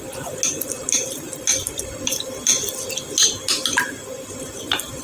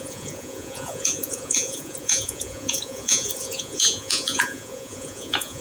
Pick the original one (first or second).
first